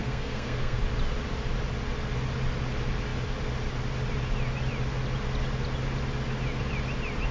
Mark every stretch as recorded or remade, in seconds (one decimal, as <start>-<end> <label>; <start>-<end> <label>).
0.0-0.8 remade; 0.8-7.3 recorded